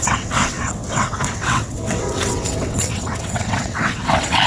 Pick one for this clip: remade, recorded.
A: remade